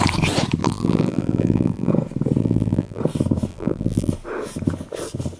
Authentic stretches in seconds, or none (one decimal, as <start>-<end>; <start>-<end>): 0.0-0.6; 1.9-2.4; 3.0-3.5; 4.1-5.4